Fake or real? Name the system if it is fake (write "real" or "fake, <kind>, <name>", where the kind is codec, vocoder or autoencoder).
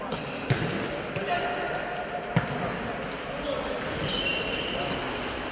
real